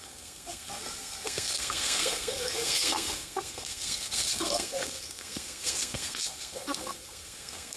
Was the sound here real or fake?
fake